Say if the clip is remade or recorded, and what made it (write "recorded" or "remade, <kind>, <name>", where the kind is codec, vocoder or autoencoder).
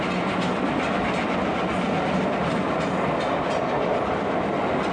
recorded